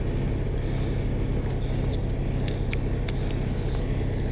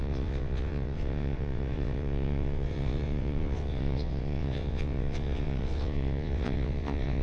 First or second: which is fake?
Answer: second